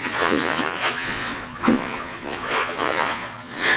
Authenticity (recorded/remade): remade